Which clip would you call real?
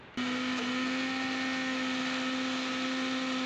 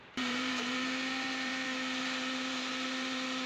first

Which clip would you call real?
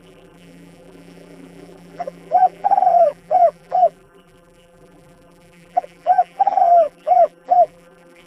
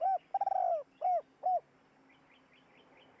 second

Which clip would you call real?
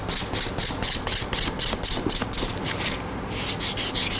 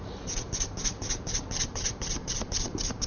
first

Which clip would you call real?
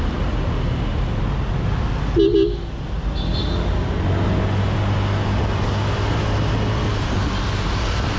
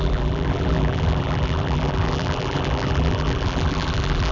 first